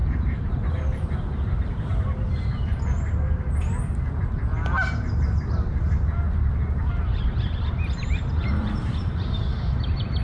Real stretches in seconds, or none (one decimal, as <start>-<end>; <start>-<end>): 1.9-7.0